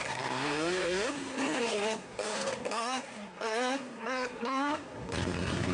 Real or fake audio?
fake